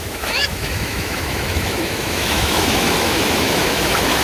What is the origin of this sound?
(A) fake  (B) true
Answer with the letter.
A